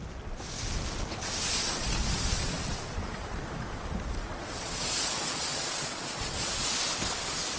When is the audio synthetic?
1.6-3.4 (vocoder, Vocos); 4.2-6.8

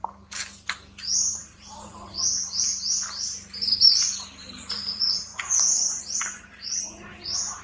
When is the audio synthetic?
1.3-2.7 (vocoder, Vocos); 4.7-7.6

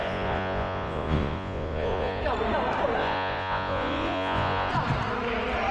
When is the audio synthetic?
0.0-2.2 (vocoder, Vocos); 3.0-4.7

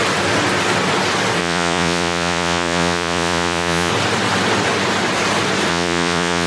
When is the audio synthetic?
1.4-3.9 (vocoder, Vocos); 5.7-6.5

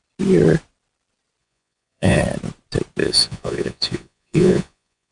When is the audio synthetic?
1.4-2.2 (vocoder, Vocos); 3.0-5.1

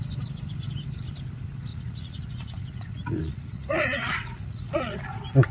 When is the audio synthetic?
1.7-5.0 (vocoder, Vocos)

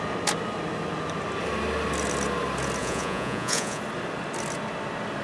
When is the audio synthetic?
2.8-3.8 (vocoder, Vocos)